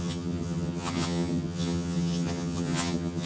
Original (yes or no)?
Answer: no